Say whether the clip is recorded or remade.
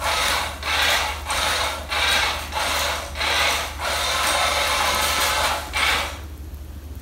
recorded